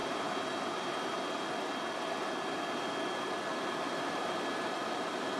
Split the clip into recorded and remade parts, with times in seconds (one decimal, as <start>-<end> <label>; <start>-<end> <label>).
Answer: 0.0-3.2 recorded; 3.2-5.4 remade